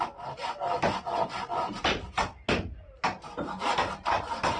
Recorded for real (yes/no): yes